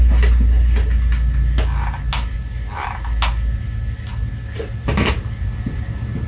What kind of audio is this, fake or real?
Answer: real